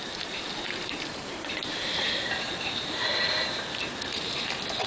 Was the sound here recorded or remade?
remade